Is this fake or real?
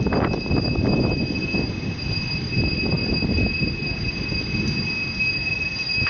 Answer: real